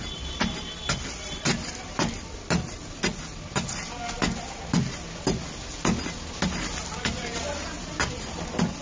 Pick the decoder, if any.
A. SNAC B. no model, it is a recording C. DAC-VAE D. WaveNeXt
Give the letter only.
B